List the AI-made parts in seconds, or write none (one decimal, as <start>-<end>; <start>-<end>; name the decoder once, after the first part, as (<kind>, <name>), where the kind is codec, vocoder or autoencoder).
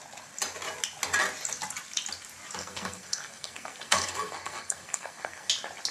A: 2.6-5.5 (codec, SNAC)